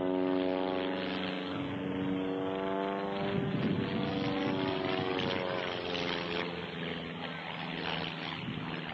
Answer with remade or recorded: recorded